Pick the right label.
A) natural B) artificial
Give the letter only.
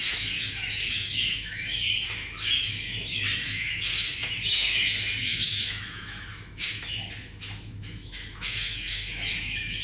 B